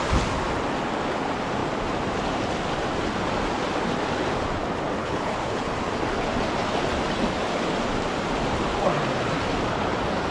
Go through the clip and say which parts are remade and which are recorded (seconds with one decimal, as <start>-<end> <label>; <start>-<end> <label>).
0.0-5.0 recorded; 5.0-5.7 remade; 5.7-10.3 recorded